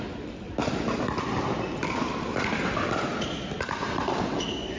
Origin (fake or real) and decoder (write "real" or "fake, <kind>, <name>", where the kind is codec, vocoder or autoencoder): real